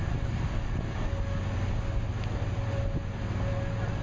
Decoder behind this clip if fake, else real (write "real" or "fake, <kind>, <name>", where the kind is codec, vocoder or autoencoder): real